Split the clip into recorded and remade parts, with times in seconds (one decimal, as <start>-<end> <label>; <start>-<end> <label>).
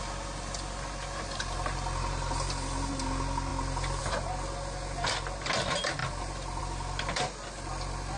0.0-3.5 recorded; 3.5-4.0 remade; 4.0-8.2 recorded